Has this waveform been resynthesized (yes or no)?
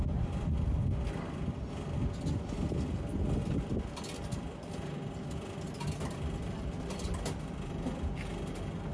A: no